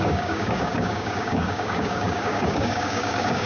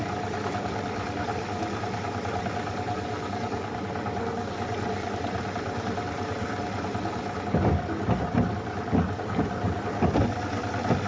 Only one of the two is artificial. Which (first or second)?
first